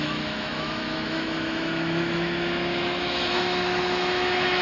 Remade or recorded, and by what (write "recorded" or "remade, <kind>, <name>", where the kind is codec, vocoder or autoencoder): remade, autoencoder, DAC-VAE